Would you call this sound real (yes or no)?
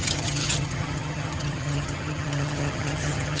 no